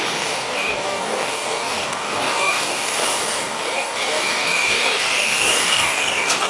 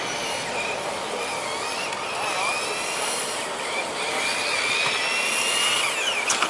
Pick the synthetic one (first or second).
first